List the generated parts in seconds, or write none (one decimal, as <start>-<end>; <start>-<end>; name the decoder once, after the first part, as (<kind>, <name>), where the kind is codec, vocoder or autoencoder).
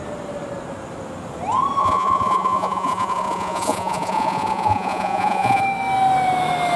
1.8-5.6 (vocoder, Vocos)